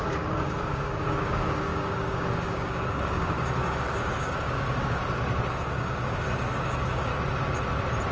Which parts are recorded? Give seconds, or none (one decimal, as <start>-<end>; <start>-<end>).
5.0-5.5; 7.1-8.1